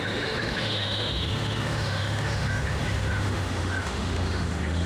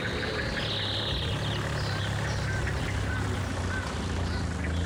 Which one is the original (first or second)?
second